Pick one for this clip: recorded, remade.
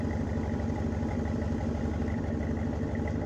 remade